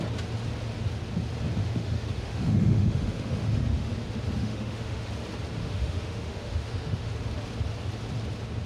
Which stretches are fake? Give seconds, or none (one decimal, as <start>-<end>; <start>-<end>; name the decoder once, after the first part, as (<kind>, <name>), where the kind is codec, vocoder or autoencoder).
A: 1.6-3.9 (autoencoder, DAC-VAE); 4.4-5.1; 5.6-7.1